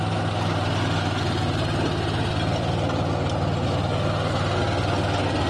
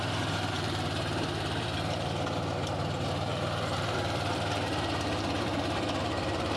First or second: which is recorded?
first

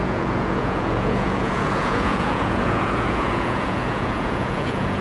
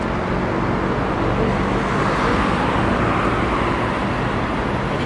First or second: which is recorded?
second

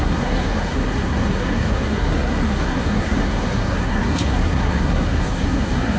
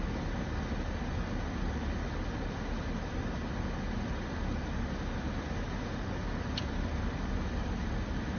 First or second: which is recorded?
second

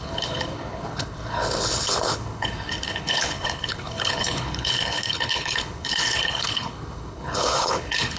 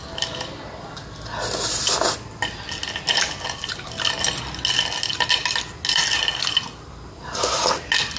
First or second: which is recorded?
second